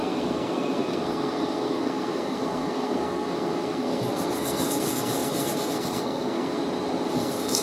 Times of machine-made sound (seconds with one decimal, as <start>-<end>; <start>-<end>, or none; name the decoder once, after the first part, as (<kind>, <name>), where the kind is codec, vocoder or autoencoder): 0.0-6.6 (codec, SNAC); 7.1-7.6

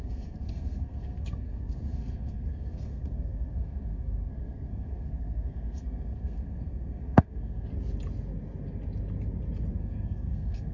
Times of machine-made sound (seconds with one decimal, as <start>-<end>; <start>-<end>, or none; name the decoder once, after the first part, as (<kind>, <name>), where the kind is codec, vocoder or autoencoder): 0.0-7.7 (codec, SNAC); 9.8-10.7

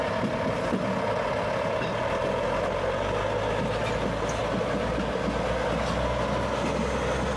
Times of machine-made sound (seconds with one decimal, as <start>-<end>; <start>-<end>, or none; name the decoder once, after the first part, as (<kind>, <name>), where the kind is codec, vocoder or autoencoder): none

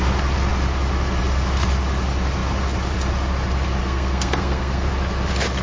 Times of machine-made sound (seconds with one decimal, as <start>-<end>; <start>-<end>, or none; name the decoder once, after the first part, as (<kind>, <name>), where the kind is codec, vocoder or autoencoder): 3.8-4.9 (codec, SNAC)

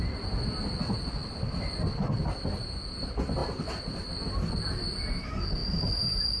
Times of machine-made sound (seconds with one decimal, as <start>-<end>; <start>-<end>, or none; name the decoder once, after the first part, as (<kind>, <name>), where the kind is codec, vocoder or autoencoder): none

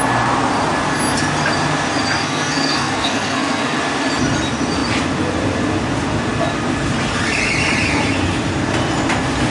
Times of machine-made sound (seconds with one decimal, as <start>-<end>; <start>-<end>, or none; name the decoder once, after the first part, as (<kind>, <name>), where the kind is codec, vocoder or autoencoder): 2.2-3.8 (codec, SNAC)

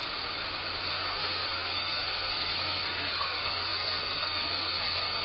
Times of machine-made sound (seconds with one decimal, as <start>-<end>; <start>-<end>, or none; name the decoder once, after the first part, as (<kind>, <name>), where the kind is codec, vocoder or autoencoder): 0.9-5.2 (codec, SNAC)

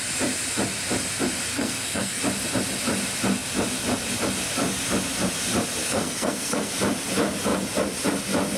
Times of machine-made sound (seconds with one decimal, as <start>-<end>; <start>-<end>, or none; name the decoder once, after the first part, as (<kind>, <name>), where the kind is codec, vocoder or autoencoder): 1.5-2.2 (codec, SNAC); 5.8-6.7